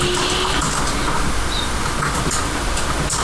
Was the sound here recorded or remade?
recorded